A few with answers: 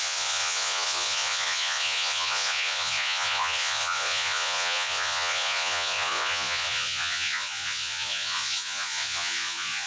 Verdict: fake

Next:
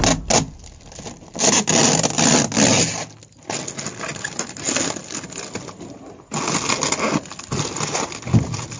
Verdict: real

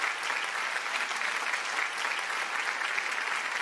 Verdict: real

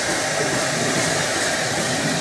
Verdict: real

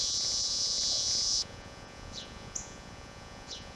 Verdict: fake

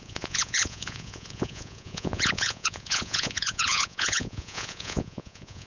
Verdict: fake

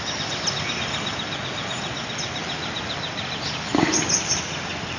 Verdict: real